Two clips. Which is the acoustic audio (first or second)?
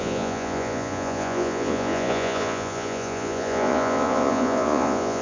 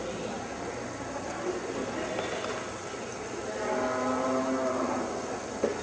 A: second